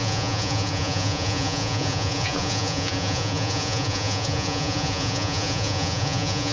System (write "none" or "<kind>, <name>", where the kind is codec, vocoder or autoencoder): vocoder, Vocos